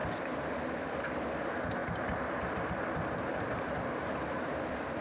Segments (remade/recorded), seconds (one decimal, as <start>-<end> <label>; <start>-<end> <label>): 0.0-5.0 recorded